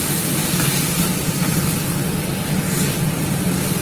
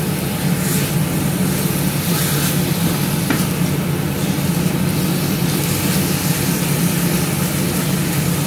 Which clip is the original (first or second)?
second